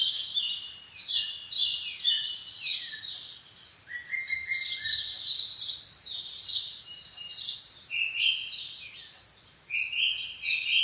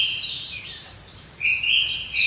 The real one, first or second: first